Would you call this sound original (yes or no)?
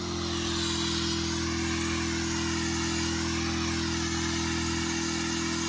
yes